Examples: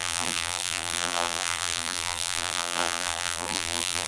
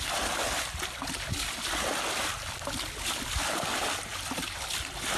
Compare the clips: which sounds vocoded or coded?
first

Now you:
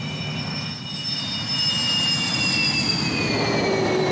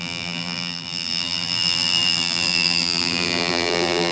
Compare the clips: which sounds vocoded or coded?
second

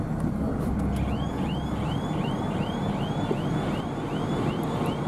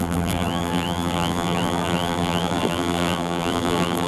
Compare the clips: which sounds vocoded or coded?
second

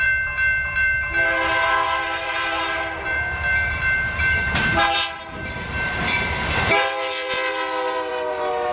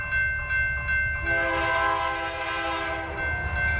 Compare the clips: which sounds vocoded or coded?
first